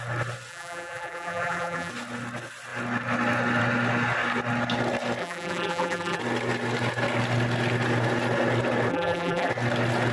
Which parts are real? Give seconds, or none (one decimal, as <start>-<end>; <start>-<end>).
0.0-0.5; 1.9-5.2; 6.2-8.9; 9.5-10.1